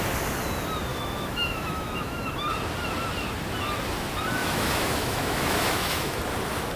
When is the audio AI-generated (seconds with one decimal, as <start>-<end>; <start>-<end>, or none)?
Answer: 0.9-2.2; 4.4-6.2